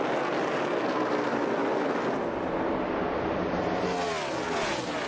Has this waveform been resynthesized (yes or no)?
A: no